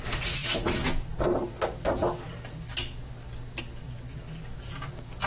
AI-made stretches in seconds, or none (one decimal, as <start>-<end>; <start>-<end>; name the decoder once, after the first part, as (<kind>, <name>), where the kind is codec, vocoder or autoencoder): none